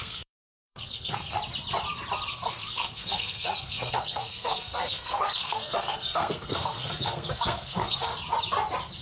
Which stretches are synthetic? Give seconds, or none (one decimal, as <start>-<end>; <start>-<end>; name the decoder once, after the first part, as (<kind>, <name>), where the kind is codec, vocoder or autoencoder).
0.0-1.4 (codec, SNAC); 2.3-8.1